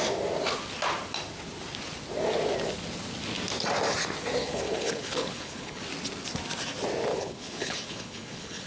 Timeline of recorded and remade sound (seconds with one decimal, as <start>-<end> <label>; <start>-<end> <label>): 0.0-4.4 recorded; 4.4-5.8 remade; 5.8-7.1 recorded; 7.1-8.7 remade